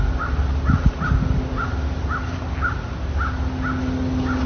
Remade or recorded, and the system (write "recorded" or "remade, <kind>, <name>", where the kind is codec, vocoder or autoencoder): recorded